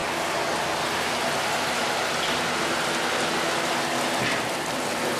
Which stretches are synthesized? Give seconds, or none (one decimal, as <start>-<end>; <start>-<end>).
none